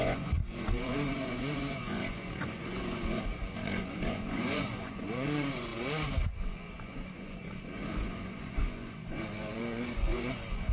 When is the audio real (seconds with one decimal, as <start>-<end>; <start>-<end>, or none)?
none